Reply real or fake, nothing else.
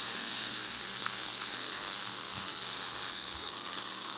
fake